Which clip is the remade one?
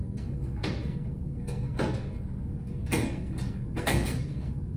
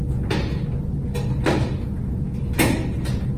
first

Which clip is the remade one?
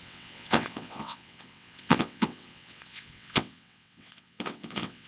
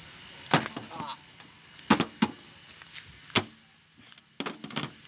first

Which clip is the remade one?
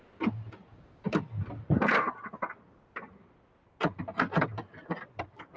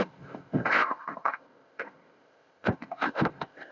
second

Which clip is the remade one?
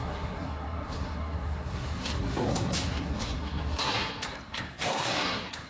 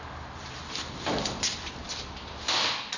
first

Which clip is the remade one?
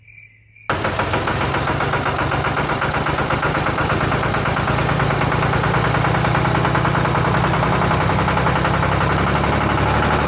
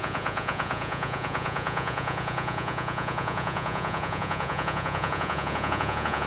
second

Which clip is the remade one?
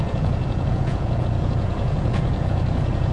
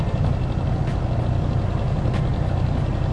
first